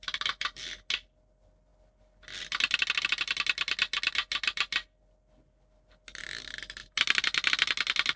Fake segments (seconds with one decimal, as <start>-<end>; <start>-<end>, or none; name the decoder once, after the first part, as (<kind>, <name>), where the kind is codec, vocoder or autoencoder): none